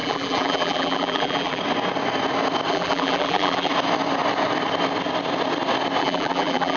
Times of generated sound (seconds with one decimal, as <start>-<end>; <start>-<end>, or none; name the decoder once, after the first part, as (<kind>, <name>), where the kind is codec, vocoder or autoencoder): 0.0-1.6 (vocoder, BigVGAN v2); 2.7-3.7; 6.0-6.8